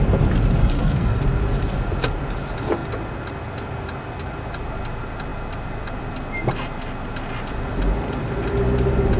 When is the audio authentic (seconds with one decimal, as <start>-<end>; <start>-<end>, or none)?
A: 0.0-0.6; 1.2-9.2